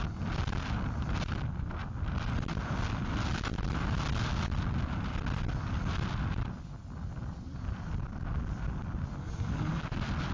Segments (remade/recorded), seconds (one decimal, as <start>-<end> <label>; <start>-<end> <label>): 0.0-10.3 recorded